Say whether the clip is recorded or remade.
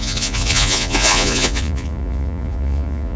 remade